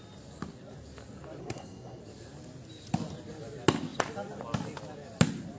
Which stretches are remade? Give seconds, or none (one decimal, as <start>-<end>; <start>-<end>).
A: 1.4-2.0